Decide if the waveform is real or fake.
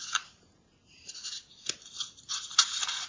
real